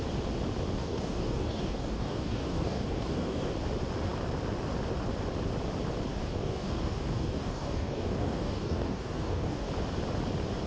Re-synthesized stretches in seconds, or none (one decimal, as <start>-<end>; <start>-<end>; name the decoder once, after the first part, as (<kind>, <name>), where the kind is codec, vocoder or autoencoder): 0.8-3.5 (codec, DAC); 6.1-9.7